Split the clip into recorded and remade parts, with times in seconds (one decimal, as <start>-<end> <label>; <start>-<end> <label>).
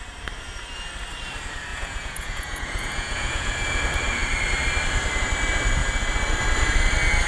0.0-1.7 recorded; 1.7-3.8 remade; 3.8-7.3 recorded